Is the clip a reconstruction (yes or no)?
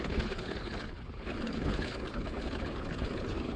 yes